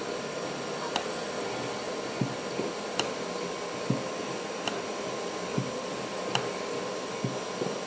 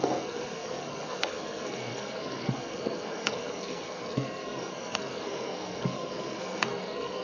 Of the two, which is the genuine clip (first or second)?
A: first